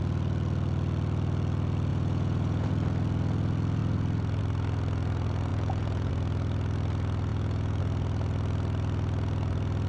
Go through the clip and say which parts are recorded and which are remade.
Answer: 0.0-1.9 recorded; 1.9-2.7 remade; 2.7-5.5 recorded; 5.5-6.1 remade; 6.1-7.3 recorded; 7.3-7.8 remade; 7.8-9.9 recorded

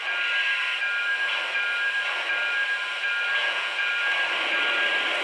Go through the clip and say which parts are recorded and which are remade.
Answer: 0.0-3.4 recorded; 3.4-3.9 remade; 3.9-5.2 recorded

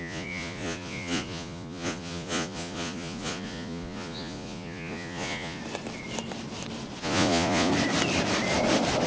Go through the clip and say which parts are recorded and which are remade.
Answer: 0.0-5.6 remade; 5.6-7.0 recorded; 7.0-7.7 remade; 7.7-9.1 recorded